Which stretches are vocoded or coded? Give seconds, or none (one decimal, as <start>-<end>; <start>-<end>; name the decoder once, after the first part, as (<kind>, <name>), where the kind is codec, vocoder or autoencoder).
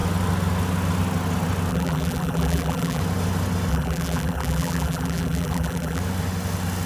1.7-3.0 (vocoder, BigVGAN v2); 3.7-6.0